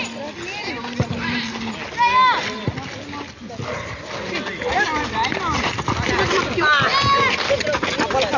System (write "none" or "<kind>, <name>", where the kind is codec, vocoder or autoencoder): none